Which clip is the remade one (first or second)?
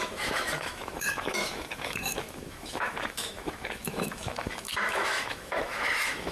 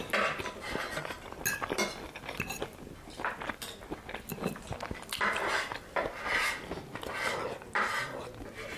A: first